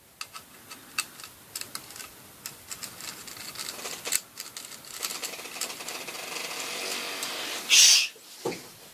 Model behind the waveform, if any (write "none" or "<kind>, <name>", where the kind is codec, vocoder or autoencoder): none